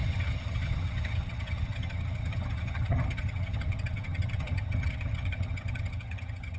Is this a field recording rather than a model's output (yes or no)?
no